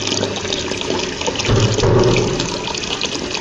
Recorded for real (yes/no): yes